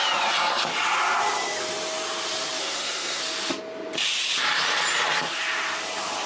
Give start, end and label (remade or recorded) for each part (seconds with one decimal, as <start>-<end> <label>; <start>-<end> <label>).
0.0-2.6 recorded; 2.6-3.2 remade; 3.2-6.3 recorded